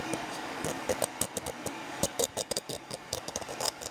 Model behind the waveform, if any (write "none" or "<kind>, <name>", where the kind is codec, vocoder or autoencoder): codec, DAC